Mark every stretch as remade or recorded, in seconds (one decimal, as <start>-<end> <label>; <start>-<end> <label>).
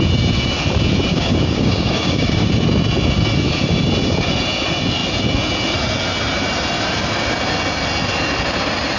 0.0-1.1 recorded; 1.1-2.5 remade; 2.5-9.0 recorded